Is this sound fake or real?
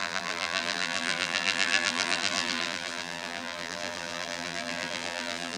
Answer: fake